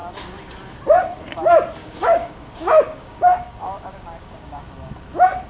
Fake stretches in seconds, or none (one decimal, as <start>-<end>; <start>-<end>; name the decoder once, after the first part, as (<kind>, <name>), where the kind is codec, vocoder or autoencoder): 1.8-4.6 (codec, DAC)